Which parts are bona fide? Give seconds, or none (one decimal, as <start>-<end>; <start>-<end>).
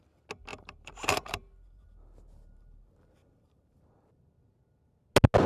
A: 0.0-0.5; 3.8-5.5